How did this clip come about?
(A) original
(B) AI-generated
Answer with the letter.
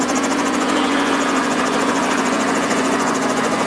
B